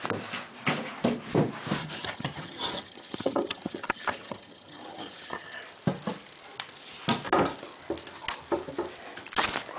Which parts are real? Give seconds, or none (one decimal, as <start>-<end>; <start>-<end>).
0.0-1.8; 5.6-9.8